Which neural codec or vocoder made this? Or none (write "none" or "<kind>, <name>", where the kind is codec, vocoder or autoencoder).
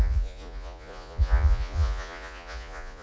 vocoder, Vocos